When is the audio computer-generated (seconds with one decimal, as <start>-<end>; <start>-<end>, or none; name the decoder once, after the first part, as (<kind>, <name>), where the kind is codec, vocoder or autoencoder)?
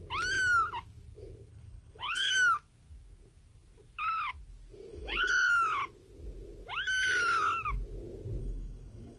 1.5-2.3 (codec, HILCodec); 4.9-5.5; 8.4-9.2